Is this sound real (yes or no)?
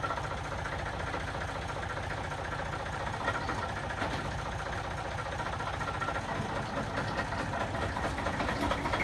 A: yes